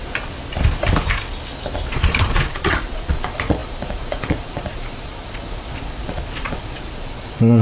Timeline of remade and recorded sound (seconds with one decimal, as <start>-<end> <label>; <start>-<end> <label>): 0.0-1.9 recorded; 1.9-7.6 remade